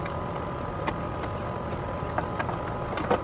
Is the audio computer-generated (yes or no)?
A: yes